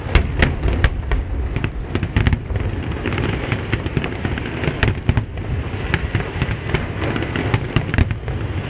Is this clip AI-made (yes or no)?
no